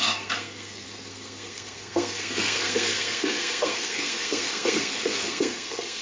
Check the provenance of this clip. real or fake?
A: fake